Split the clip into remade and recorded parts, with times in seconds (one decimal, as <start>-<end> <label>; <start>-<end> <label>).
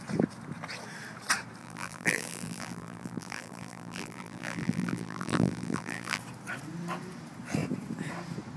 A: 0.0-1.6 recorded; 1.6-6.2 remade; 6.2-8.6 recorded